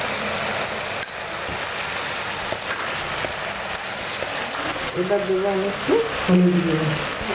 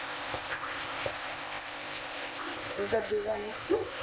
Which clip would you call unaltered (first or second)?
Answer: first